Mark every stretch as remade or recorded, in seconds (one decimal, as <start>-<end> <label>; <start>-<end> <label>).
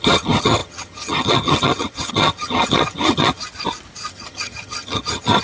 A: 0.0-3.4 remade; 3.4-4.1 recorded; 4.1-5.4 remade